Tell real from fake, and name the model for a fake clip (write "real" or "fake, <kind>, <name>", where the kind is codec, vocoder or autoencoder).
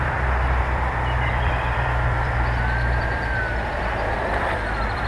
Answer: fake, vocoder, BigVGAN v2